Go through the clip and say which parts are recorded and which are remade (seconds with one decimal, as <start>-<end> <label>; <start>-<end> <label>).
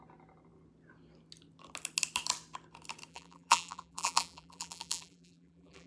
0.0-3.1 recorded; 3.1-5.9 remade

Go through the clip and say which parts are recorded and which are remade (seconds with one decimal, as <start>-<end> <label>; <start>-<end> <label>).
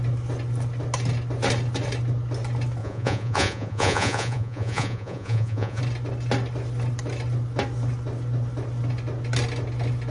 0.0-2.8 recorded; 2.8-5.8 remade; 5.8-10.1 recorded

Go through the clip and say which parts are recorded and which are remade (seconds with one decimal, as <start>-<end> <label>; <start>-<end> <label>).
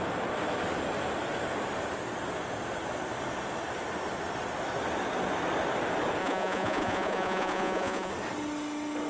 0.0-6.2 recorded; 6.2-8.1 remade; 8.1-9.1 recorded